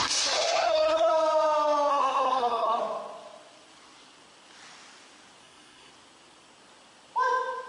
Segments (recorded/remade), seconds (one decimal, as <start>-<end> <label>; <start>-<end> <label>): 0.0-1.1 remade; 1.1-1.9 recorded; 1.9-2.8 remade; 2.8-5.4 recorded; 5.4-5.9 remade; 5.9-7.7 recorded

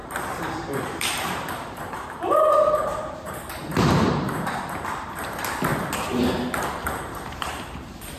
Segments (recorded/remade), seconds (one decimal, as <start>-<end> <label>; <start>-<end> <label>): 0.0-5.7 remade; 5.7-6.8 recorded; 6.8-8.2 remade

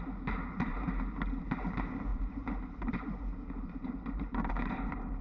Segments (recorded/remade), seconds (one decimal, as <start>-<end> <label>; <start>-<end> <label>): 0.0-0.7 recorded; 0.7-1.4 remade; 1.4-2.1 recorded; 2.1-5.2 remade